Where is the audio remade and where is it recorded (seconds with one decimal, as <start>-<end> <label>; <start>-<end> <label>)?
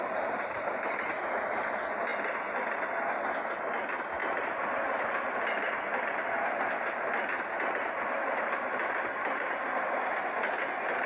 0.0-11.1 recorded